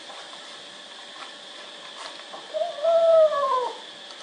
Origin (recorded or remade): recorded